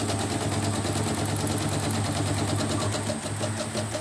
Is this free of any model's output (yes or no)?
yes